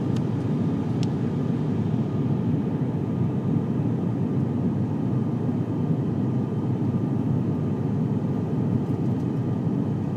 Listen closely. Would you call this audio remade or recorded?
recorded